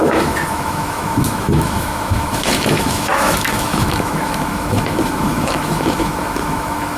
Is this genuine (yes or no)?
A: no